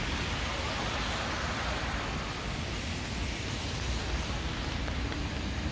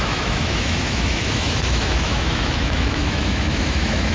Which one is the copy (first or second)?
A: second